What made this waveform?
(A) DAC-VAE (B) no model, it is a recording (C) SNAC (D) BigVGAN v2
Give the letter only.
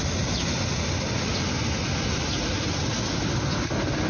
B